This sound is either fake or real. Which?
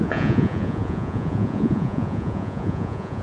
fake